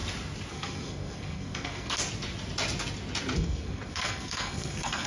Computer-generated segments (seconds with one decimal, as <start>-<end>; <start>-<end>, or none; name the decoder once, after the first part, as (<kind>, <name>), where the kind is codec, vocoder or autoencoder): 0.5-2.0 (codec, SNAC); 3.4-5.1